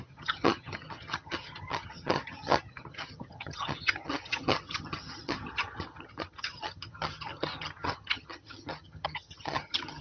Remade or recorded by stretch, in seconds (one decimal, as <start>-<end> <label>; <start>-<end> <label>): 0.0-10.0 remade